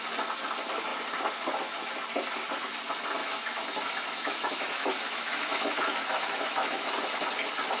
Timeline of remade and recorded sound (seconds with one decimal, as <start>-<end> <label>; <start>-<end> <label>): 0.0-3.2 recorded; 3.2-6.8 remade; 6.8-7.8 recorded

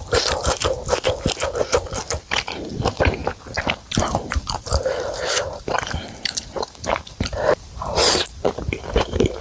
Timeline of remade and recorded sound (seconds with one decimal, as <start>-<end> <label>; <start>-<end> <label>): 0.0-0.6 remade; 0.6-2.7 recorded; 2.7-3.2 remade; 3.2-3.7 recorded; 3.7-9.4 remade

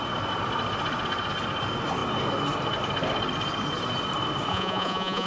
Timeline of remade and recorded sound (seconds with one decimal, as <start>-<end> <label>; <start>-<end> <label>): 0.0-4.5 recorded; 4.5-5.3 remade

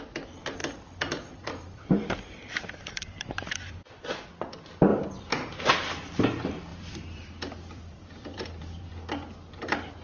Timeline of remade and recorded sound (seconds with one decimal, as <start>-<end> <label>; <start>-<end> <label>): 0.0-0.6 recorded; 0.6-3.9 remade; 3.9-4.9 recorded; 4.9-5.7 remade; 5.7-6.7 recorded; 6.7-8.9 remade; 8.9-10.0 recorded

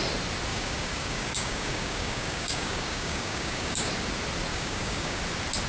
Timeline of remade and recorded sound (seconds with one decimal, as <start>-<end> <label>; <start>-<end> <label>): 0.0-0.5 recorded; 0.5-3.9 remade; 3.9-4.5 recorded; 4.5-5.2 remade; 5.2-5.7 recorded

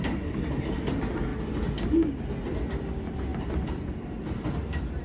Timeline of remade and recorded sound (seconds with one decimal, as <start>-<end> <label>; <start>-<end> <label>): 0.0-5.0 recorded